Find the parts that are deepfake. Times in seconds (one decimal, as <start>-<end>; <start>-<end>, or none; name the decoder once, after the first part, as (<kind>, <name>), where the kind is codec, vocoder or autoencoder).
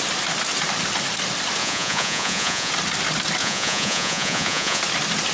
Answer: 1.6-2.7 (vocoder, Vocos); 3.4-4.8